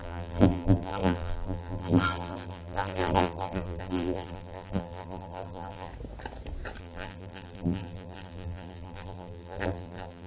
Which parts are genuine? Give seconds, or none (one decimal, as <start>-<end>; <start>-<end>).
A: 5.9-6.8

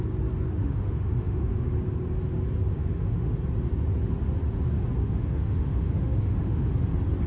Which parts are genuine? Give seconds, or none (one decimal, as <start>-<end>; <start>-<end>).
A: 0.0-0.6; 1.7-2.7; 3.4-5.0; 6.7-7.3